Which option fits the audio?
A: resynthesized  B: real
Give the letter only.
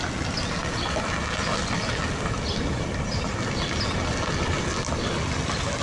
B